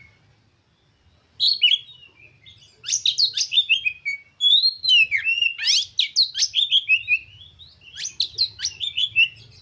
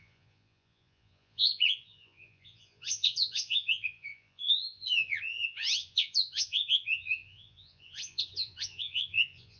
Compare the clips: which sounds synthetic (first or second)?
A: second